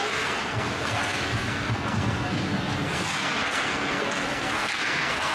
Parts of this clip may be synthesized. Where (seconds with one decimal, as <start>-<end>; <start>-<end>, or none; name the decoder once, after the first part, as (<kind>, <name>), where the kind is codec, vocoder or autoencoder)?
0.0-5.3 (codec, SNAC)